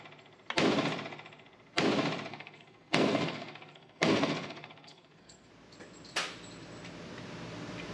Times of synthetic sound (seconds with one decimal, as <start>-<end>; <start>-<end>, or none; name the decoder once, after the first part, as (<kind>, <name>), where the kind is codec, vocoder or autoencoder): 2.3-5.5 (codec, SNAC)